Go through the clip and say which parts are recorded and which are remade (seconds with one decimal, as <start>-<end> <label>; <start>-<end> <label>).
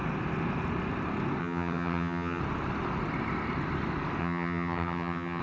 0.0-1.4 recorded; 1.4-2.4 remade; 2.4-4.2 recorded; 4.2-5.4 remade